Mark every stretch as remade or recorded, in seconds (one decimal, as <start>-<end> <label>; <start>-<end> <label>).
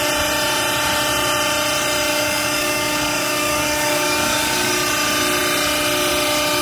0.0-2.1 recorded; 2.1-4.7 remade; 4.7-6.6 recorded